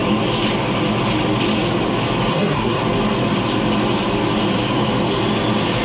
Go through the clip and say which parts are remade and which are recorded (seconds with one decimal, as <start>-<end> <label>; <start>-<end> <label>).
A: 0.0-2.3 recorded; 2.3-2.8 remade; 2.8-5.8 recorded

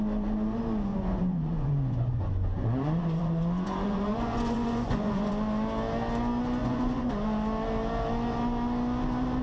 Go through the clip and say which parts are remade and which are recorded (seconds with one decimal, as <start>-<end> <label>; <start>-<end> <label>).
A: 0.0-0.9 recorded; 0.9-5.3 remade; 5.3-6.6 recorded; 6.6-7.1 remade; 7.1-9.4 recorded

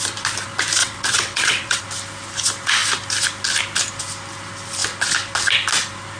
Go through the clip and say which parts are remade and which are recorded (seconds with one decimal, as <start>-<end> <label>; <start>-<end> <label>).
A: 0.0-0.8 recorded; 0.8-1.8 remade; 1.8-6.2 recorded

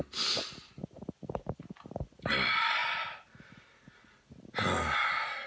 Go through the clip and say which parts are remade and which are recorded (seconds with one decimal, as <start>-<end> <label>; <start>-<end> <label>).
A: 0.0-5.5 recorded

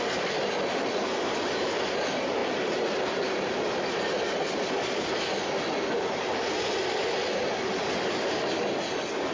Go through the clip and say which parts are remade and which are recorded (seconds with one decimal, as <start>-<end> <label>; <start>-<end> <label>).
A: 0.0-9.3 recorded